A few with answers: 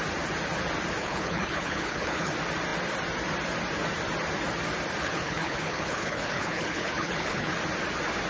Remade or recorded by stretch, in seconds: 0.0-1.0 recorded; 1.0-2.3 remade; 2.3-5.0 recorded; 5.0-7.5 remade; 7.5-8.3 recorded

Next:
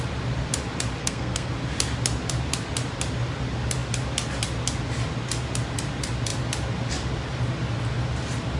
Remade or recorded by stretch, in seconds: 0.0-1.0 recorded; 1.0-1.5 remade; 1.5-8.6 recorded

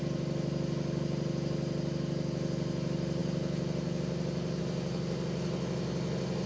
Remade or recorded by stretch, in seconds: 0.0-6.5 recorded

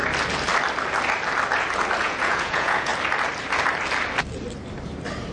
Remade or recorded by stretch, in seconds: 0.0-2.0 recorded; 2.0-2.9 remade; 2.9-5.3 recorded

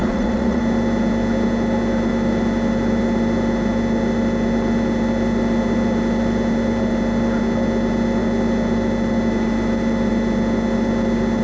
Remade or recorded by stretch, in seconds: 0.0-0.6 remade; 0.6-11.4 recorded